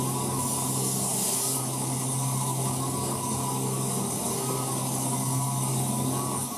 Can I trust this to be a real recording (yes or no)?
no